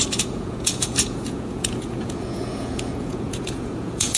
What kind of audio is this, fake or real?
fake